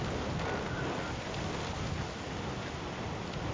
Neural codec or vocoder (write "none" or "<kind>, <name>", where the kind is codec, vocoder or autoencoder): none